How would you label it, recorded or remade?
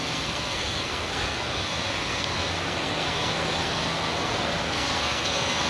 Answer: remade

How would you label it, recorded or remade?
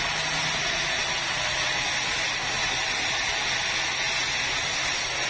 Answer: recorded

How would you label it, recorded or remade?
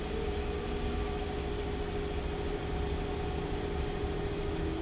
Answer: recorded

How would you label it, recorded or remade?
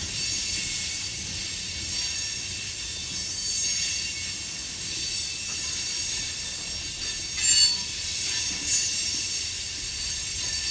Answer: recorded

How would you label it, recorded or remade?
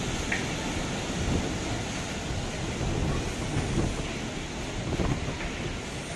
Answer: recorded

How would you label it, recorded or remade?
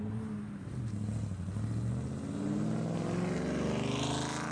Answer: recorded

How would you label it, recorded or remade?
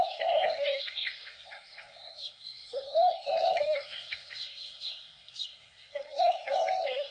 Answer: remade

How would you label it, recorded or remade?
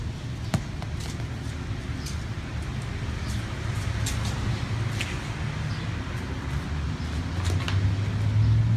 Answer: recorded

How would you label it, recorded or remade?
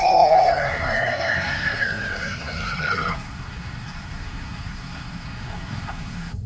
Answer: remade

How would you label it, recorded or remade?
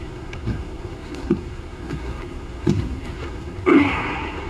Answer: remade